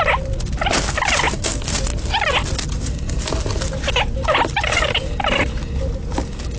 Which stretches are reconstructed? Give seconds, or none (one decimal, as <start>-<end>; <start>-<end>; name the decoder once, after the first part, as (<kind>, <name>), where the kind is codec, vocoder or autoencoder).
none